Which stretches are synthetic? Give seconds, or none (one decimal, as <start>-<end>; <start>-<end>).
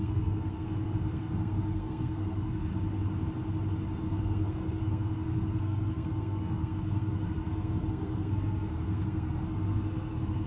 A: 0.0-2.7; 4.0-10.5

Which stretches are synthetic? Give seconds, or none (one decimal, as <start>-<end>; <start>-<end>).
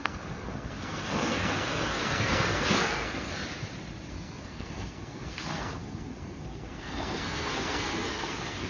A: 0.0-3.4; 4.1-8.7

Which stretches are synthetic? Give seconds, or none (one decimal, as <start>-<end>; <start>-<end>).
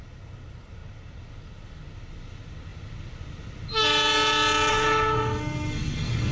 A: 4.7-6.3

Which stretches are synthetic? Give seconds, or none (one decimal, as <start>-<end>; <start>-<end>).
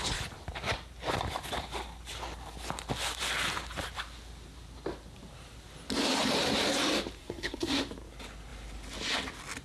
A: 7.2-7.8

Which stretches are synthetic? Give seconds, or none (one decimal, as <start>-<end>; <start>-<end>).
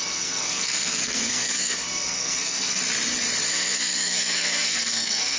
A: 0.0-2.8; 3.5-5.4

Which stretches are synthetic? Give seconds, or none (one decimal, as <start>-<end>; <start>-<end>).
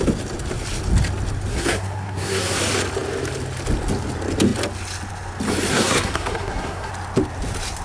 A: 1.5-2.6; 5.7-6.9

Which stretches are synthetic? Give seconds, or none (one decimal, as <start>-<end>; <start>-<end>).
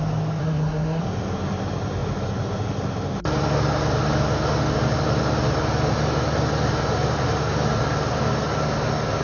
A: 0.4-1.0